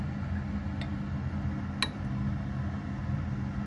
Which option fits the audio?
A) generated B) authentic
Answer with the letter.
B